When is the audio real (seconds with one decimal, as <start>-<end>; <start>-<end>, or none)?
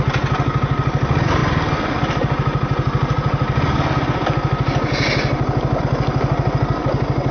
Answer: 0.0-7.3